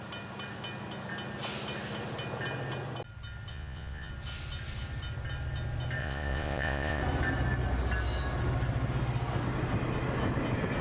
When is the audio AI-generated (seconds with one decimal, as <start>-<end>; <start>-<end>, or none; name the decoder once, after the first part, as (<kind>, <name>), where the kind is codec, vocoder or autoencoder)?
3.5-4.1 (vocoder, Vocos); 6.0-7.0